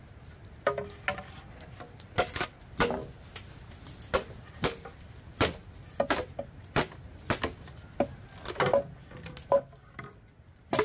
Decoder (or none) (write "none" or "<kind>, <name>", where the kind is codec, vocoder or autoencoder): none